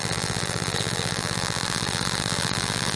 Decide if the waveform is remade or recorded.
remade